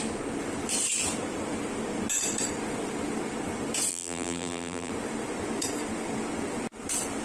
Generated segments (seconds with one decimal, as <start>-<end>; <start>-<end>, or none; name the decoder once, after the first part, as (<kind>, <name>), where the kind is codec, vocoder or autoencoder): 3.9-4.9 (vocoder, BigVGAN v2)